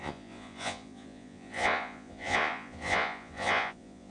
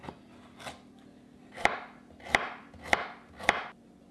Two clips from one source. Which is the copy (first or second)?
first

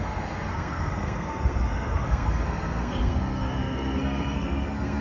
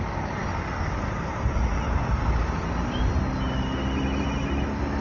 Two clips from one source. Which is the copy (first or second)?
first